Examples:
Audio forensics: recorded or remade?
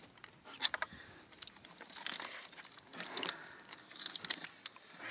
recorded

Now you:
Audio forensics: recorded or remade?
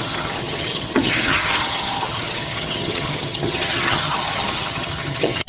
remade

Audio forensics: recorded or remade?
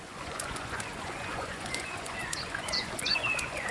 remade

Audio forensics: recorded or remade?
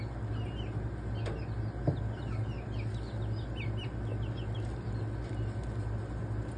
recorded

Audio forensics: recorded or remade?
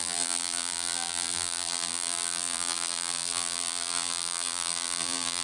remade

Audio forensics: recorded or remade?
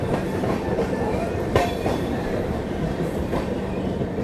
remade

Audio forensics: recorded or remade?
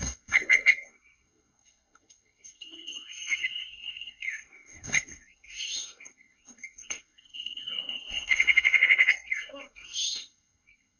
remade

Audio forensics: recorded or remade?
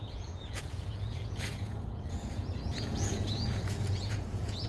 remade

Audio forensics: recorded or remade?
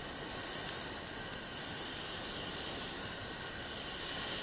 recorded